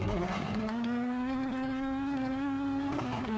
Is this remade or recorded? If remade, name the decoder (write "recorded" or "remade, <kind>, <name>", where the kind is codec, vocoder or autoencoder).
remade, codec, SNAC